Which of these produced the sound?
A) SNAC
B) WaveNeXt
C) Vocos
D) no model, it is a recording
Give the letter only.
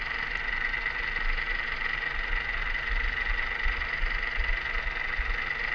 D